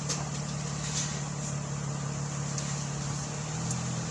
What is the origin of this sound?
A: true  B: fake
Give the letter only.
A